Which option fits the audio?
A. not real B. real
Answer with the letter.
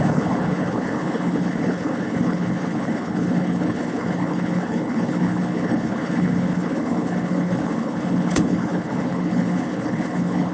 A